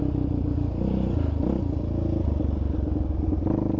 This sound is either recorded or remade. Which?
recorded